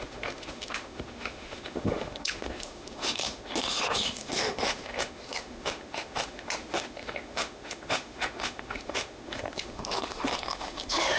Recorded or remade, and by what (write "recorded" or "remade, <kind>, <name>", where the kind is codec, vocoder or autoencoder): remade, autoencoder, DAC-VAE